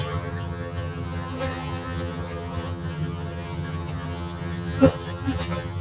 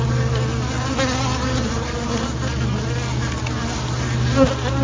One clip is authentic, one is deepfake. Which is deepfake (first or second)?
first